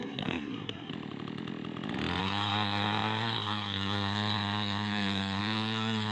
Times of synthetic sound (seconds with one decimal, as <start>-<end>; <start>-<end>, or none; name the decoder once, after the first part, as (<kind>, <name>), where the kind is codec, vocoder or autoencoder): 0.0-0.9 (codec, SNAC); 2.2-6.1